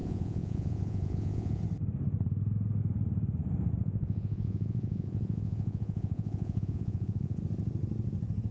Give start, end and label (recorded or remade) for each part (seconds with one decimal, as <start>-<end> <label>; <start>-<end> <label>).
0.0-1.6 remade; 1.6-3.8 recorded; 3.8-7.4 remade; 7.4-8.5 recorded